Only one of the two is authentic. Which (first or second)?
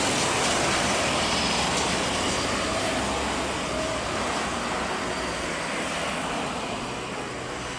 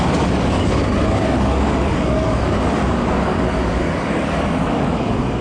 first